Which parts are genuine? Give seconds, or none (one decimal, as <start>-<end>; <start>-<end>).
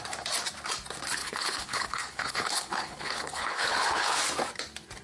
0.0-1.2; 4.2-5.0